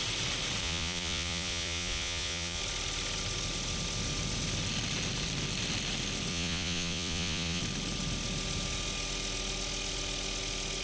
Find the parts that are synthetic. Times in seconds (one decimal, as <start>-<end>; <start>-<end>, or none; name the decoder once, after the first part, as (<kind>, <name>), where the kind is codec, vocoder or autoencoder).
0.6-2.6 (vocoder, Vocos); 6.3-7.6